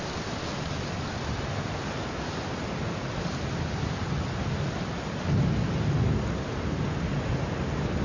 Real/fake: real